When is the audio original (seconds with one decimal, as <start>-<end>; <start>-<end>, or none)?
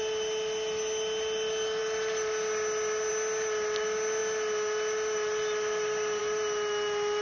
0.0-7.2